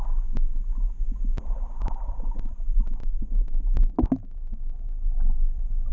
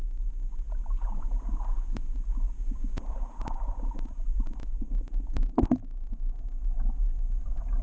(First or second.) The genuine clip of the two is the first